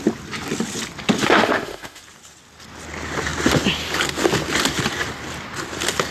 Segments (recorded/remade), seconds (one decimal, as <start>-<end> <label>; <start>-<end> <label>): 0.0-1.2 recorded; 1.2-2.0 remade; 2.0-6.1 recorded